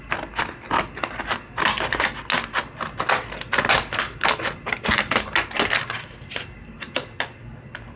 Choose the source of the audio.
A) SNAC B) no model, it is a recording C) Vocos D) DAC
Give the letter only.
B